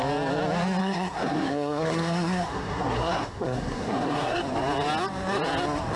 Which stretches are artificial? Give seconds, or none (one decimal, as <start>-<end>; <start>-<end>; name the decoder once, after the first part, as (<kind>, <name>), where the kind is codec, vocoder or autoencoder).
0.8-4.4 (codec, SNAC)